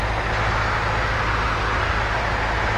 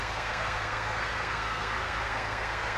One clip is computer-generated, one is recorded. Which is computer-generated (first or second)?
second